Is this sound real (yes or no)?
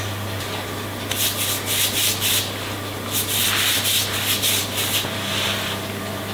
yes